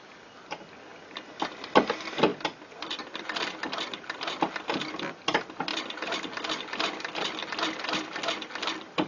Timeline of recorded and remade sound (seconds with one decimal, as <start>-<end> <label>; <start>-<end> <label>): 0.0-0.9 remade; 0.9-1.4 recorded; 1.4-5.7 remade; 5.7-6.6 recorded; 6.6-7.4 remade; 7.4-8.7 recorded; 8.7-9.1 remade